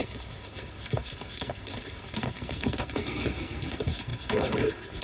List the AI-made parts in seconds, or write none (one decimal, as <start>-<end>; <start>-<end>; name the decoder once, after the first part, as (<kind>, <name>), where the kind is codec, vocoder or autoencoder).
0.0-5.0 (codec, SNAC)